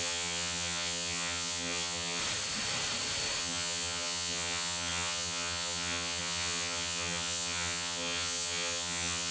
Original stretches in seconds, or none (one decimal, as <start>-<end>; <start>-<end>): 2.2-3.4